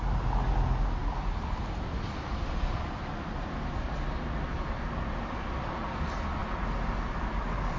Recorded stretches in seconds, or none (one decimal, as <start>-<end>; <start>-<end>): 0.0-7.8